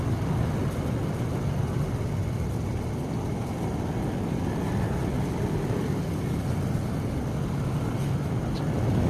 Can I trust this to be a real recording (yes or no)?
yes